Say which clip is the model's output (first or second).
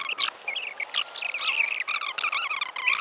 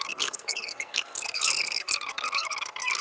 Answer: second